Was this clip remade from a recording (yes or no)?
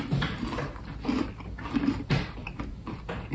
no